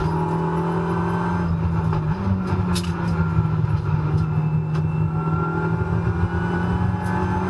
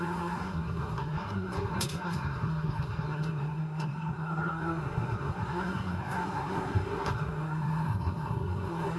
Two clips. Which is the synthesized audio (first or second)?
second